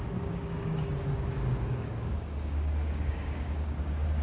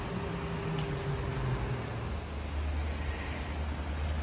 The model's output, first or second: first